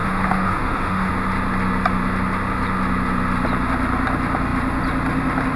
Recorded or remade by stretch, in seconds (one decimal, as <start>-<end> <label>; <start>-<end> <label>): 0.0-1.1 remade; 1.1-5.6 recorded